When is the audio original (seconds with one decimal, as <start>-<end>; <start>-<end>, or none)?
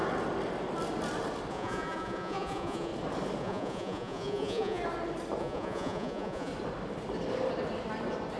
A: 0.0-1.5; 2.9-3.4; 4.8-5.4; 6.5-8.4